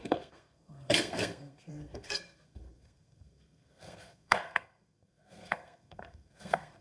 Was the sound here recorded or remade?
remade